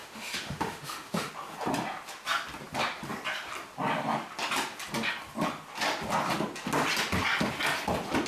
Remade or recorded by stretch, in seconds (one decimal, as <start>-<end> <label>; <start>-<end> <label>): 0.0-1.3 remade; 1.3-8.3 recorded

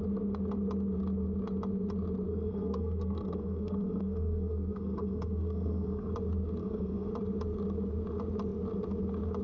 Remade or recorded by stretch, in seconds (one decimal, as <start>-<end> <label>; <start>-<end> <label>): 0.0-2.3 recorded; 2.3-6.1 remade; 6.1-6.6 recorded; 6.6-7.1 remade; 7.1-9.4 recorded

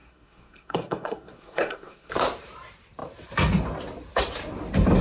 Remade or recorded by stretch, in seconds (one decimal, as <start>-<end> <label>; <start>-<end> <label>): 0.0-2.1 remade; 2.1-5.0 recorded

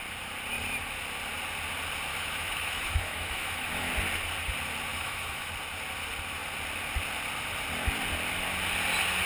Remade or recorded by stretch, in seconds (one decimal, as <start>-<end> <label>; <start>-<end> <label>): 0.0-2.1 recorded; 2.1-3.9 remade; 3.9-4.9 recorded; 4.9-5.5 remade; 5.5-9.3 recorded